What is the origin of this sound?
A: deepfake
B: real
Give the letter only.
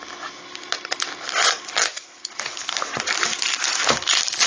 B